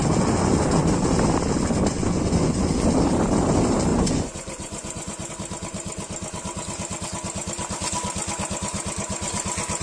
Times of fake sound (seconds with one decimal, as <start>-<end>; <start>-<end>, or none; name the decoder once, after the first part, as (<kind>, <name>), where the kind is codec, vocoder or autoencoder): 1.9-2.7 (vocoder, Vocos); 3.9-5.3